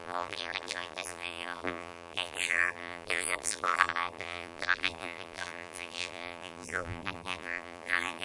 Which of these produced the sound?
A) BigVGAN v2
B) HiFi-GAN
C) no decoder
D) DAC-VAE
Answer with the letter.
A